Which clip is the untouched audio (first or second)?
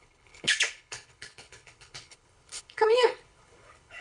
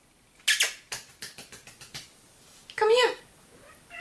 second